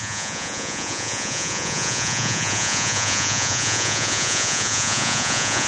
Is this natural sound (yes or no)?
no